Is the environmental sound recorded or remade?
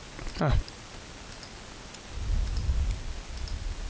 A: recorded